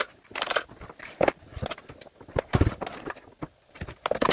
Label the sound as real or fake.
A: real